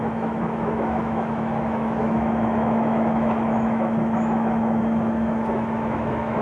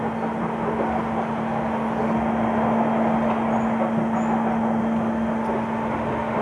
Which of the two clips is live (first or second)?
second